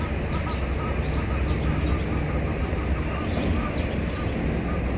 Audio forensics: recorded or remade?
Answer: recorded